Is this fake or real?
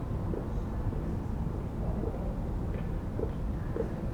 real